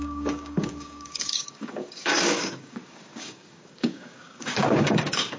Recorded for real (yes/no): no